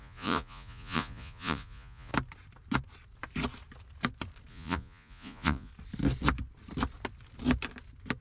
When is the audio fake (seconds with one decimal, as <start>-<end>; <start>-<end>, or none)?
0.0-2.1; 4.5-5.7